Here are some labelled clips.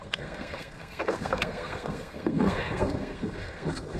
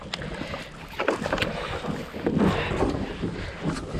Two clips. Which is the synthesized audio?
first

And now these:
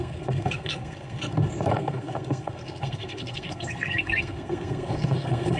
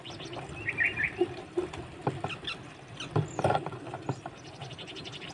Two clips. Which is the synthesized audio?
first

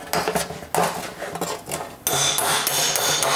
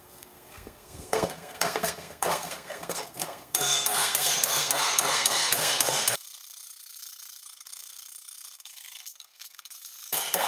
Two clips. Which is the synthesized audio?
second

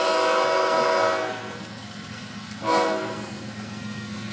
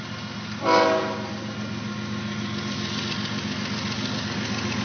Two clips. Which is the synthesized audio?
first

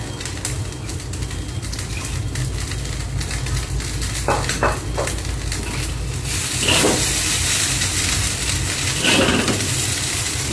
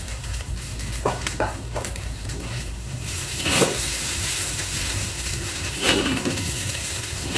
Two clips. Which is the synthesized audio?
second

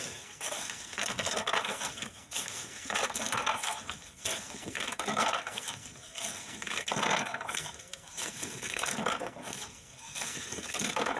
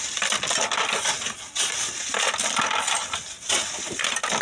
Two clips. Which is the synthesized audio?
first